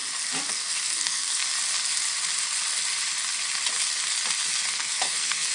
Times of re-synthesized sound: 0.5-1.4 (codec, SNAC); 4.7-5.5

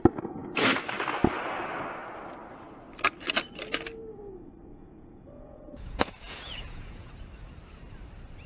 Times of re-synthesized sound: 4.7-7.1 (vocoder, Vocos)

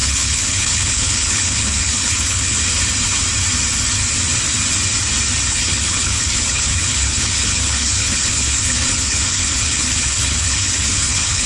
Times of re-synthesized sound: 0.0-2.6 (codec, HILCodec); 5.5-11.5

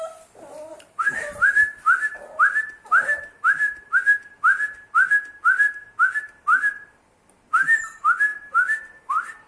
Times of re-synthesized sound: none

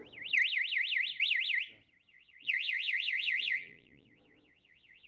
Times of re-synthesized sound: 2.1-5.1 (vocoder, Vocos)

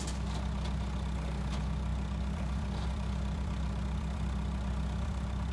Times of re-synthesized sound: 1.9-5.5 (vocoder, BigVGAN v2)

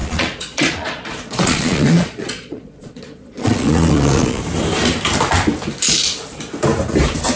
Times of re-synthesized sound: 0.0-4.4 (vocoder, Vocos)